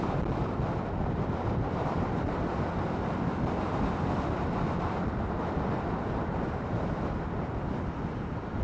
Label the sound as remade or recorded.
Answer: recorded